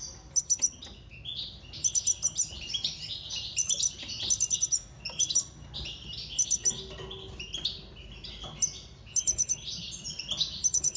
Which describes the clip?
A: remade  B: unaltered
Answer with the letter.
B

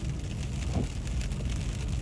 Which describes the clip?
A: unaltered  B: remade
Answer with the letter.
A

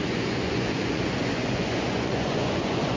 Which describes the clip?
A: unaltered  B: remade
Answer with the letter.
B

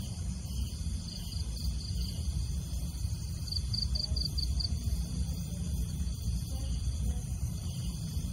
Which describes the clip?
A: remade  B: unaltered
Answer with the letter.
A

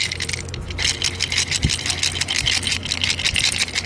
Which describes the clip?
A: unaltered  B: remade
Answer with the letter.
A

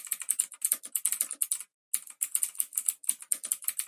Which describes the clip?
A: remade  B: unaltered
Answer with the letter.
B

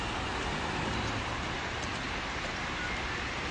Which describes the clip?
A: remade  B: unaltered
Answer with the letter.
B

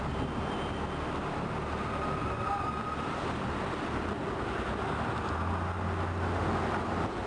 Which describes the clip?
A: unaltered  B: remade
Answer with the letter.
A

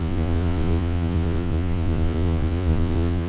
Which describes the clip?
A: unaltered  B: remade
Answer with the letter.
B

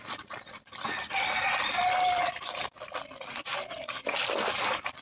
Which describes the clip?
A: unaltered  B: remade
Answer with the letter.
A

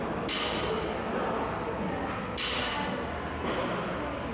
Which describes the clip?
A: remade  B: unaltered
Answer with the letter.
B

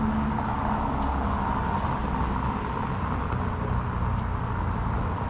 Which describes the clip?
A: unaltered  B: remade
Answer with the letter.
A